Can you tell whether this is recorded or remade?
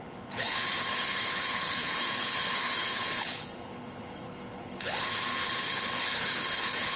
remade